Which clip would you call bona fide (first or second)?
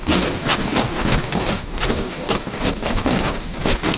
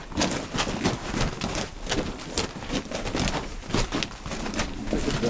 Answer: second